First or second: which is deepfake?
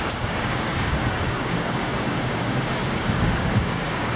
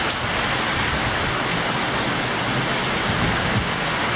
first